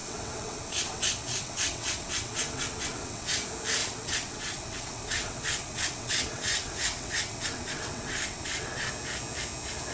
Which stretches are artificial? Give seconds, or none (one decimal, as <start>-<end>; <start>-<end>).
0.0-3.3; 3.8-8.9